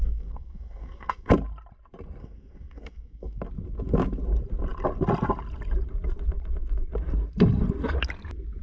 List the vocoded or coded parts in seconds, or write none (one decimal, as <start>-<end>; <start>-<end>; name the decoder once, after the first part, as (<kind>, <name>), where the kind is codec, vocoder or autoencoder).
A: 0.0-1.3 (codec, SNAC); 2.2-3.4